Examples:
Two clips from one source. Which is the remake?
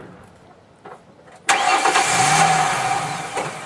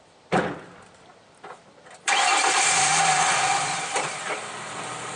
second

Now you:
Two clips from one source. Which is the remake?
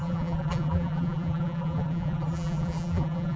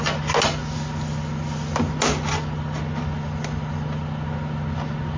first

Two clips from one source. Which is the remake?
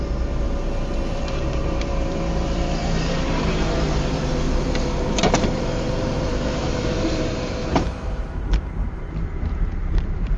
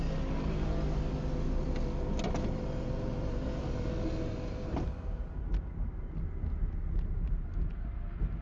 first